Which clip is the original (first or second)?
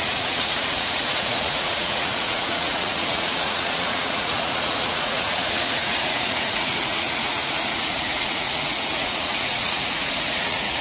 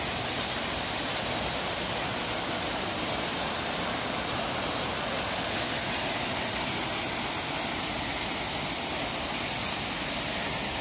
second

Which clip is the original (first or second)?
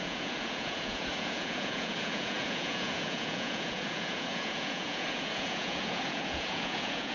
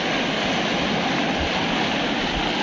second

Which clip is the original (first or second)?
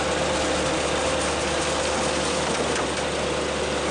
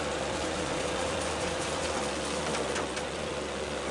first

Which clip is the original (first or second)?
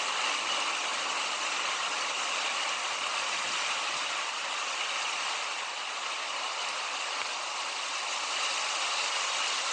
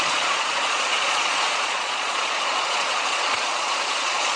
first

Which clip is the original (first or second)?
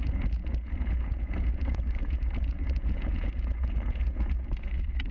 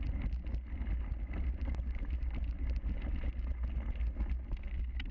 second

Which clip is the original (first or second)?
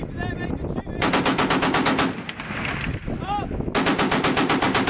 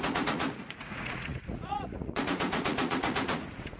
first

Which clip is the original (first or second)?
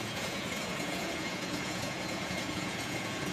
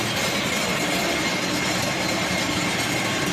second